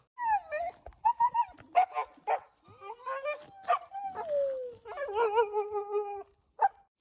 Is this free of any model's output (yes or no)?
yes